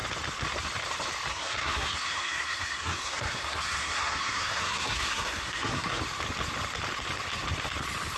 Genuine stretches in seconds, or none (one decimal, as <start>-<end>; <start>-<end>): 0.0-1.3; 6.0-8.2